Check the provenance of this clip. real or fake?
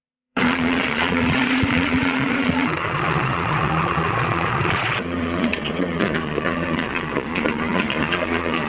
fake